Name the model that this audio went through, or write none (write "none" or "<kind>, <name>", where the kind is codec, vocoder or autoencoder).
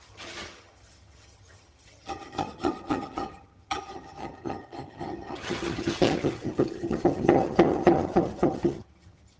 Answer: vocoder, HiFi-GAN